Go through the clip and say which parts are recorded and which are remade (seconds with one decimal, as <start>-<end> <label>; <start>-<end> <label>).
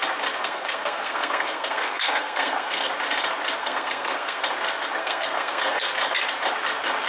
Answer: 0.0-0.4 recorded; 0.4-2.9 remade; 2.9-3.6 recorded; 3.6-4.4 remade; 4.4-5.0 recorded; 5.0-5.9 remade; 5.9-7.1 recorded